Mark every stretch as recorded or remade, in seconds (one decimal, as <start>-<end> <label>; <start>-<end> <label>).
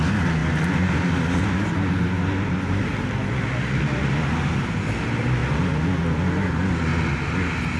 0.0-7.8 recorded